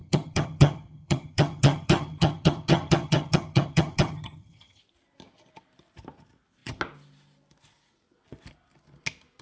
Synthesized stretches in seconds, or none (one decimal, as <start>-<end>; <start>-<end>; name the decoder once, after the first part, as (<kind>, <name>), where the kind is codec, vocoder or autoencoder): 0.0-4.8 (vocoder, HiFi-GAN)